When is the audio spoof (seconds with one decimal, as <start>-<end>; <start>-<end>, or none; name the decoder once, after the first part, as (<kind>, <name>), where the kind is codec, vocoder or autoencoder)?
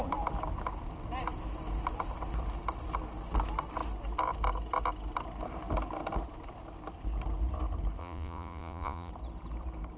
8.0-9.1 (vocoder, Vocos)